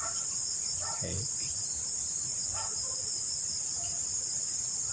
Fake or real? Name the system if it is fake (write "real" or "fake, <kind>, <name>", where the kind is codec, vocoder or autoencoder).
fake, vocoder, BigVGAN v2